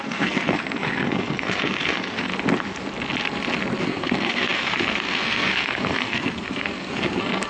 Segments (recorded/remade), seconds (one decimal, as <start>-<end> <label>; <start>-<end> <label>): 0.0-2.3 remade; 2.3-3.8 recorded; 3.8-7.5 remade